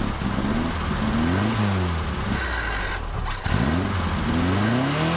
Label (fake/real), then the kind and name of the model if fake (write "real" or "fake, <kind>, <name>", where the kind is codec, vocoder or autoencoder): real